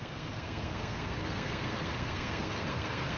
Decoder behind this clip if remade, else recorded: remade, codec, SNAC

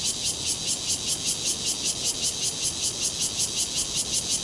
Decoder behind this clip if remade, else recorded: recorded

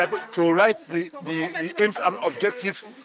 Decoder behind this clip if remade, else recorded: remade, codec, SNAC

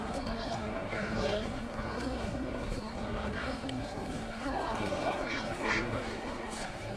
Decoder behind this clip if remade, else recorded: remade, codec, SNAC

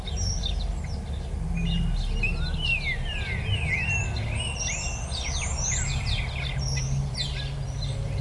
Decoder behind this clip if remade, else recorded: recorded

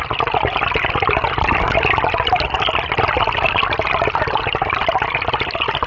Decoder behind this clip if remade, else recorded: recorded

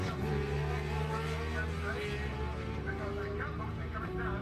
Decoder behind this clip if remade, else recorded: recorded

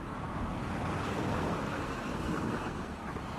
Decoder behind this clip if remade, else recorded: remade, codec, SNAC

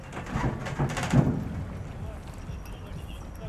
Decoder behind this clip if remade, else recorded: recorded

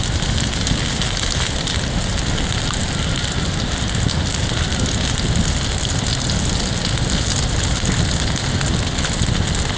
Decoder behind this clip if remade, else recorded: recorded